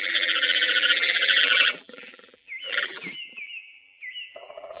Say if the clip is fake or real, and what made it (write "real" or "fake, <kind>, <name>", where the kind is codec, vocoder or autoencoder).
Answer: fake, vocoder, BigVGAN v2